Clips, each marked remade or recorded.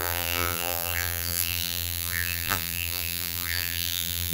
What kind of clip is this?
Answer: remade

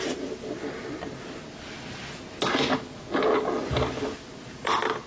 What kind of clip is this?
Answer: recorded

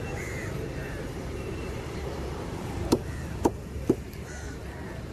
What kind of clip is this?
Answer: remade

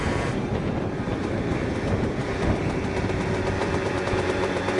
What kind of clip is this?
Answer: remade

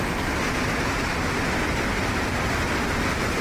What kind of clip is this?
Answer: recorded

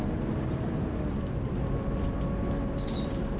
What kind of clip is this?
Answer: remade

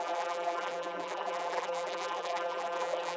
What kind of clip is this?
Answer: remade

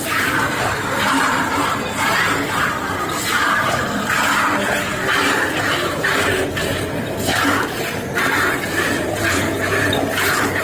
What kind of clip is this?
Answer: remade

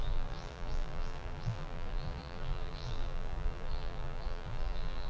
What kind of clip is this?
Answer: remade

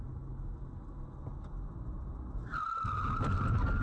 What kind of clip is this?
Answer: recorded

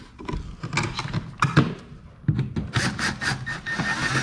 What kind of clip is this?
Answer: recorded